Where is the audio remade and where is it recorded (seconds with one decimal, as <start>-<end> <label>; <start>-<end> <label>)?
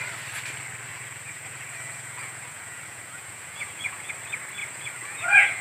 0.0-0.9 recorded; 0.9-4.1 remade; 4.1-4.6 recorded; 4.6-5.6 remade